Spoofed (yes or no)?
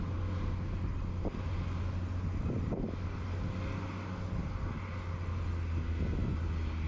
no